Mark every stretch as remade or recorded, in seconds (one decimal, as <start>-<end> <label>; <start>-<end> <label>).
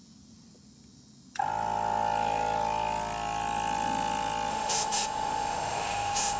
0.0-4.5 recorded; 4.5-6.4 remade